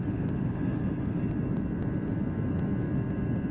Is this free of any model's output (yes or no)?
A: yes